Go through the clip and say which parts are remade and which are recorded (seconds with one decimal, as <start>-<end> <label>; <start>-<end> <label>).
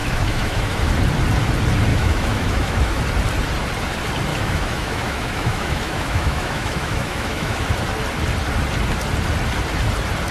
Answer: 0.0-0.9 remade; 0.9-1.9 recorded; 1.9-3.0 remade; 3.0-4.3 recorded; 4.3-7.8 remade; 7.8-10.3 recorded